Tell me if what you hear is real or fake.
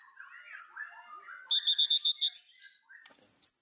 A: real